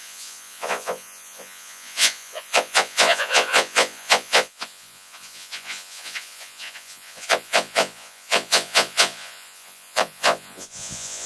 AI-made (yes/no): yes